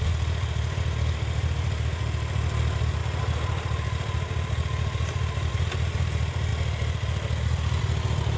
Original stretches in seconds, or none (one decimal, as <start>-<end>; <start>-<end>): 0.0-8.4